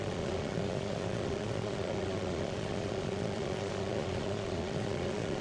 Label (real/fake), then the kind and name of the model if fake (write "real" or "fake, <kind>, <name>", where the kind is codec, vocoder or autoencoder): fake, vocoder, Vocos